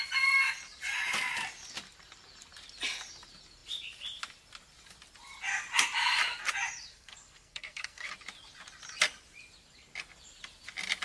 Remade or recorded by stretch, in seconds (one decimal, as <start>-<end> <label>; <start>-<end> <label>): 0.0-6.9 recorded; 6.9-8.1 remade; 8.1-11.0 recorded